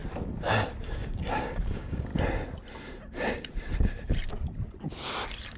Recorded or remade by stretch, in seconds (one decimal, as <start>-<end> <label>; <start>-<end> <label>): 0.0-0.8 recorded; 0.8-2.1 remade; 2.1-5.6 recorded